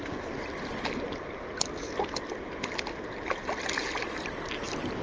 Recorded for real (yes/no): yes